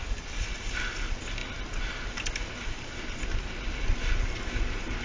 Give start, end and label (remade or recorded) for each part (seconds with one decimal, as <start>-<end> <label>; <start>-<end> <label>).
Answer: 0.0-5.0 recorded